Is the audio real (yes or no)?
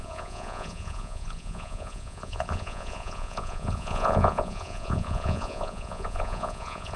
no